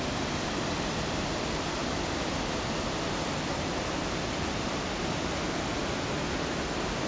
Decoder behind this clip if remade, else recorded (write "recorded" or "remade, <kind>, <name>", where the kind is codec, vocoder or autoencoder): recorded